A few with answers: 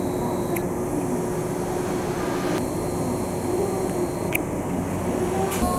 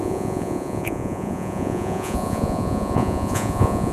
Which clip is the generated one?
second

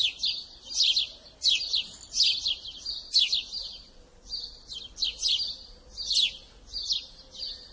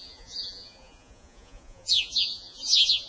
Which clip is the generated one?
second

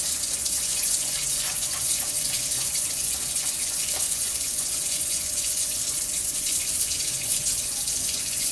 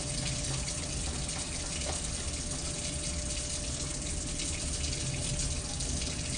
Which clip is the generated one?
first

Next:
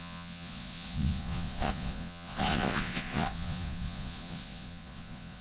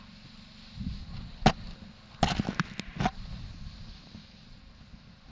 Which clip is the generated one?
first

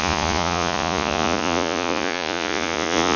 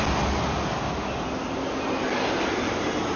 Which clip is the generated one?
first